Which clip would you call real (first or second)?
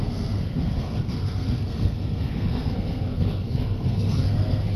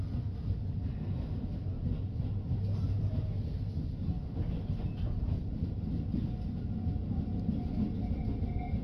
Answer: second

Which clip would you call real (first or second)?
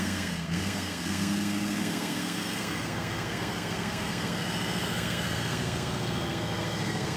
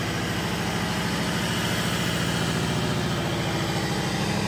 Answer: second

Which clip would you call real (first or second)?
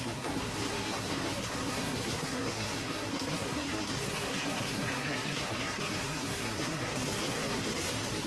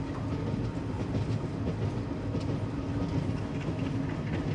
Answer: second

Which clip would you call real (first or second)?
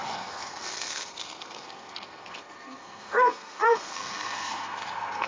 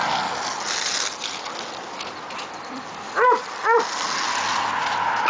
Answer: second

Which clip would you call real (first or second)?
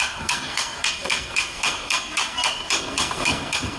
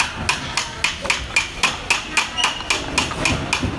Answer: second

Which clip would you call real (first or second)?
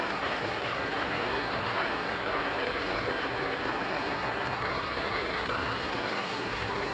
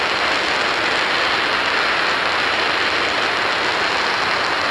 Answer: second